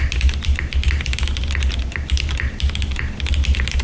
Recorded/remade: recorded